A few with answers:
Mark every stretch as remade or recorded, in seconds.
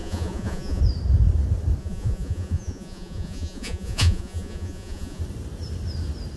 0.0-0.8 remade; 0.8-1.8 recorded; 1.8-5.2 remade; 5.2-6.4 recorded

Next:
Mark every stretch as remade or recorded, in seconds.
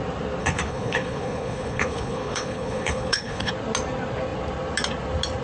0.0-0.4 recorded; 0.4-3.5 remade; 3.5-5.4 recorded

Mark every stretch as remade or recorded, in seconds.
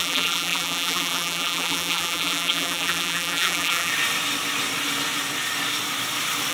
0.0-3.9 remade; 3.9-6.5 recorded